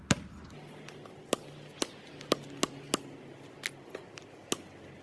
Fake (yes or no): no